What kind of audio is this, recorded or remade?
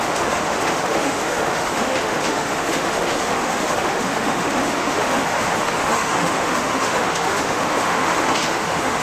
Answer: remade